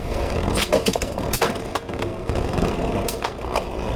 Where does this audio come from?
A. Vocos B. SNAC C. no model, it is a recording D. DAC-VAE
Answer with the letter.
B